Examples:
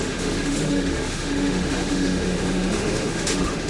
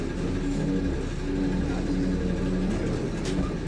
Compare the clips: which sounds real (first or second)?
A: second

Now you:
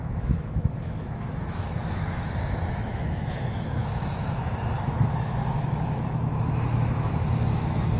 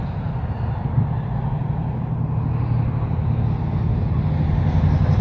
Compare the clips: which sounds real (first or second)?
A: second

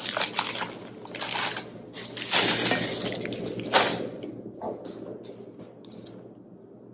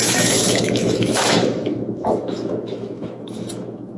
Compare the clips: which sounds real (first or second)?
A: first